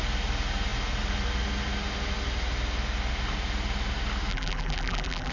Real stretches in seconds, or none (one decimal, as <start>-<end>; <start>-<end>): 0.0-4.3